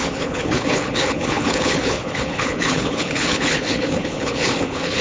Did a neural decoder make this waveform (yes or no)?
yes